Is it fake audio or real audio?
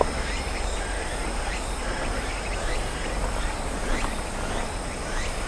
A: real